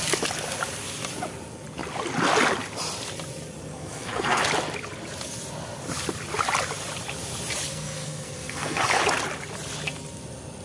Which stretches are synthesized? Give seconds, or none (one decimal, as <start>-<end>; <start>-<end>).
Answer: 3.7-4.4; 7.7-8.8